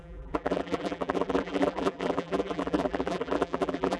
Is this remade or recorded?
remade